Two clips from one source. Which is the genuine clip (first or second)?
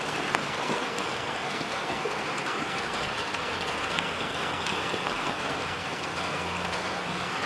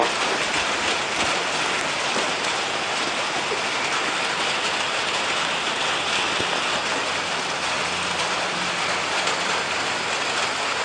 second